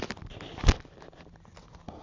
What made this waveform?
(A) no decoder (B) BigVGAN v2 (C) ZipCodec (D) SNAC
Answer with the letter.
A